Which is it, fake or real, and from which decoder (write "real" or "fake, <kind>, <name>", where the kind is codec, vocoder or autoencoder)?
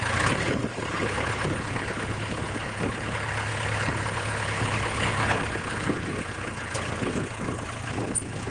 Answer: fake, codec, HILCodec